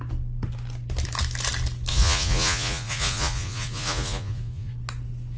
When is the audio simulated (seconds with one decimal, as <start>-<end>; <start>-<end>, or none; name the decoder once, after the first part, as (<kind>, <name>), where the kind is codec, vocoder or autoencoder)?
1.9-4.7 (vocoder, Vocos)